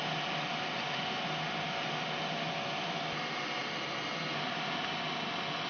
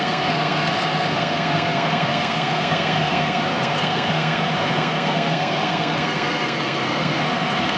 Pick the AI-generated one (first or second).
second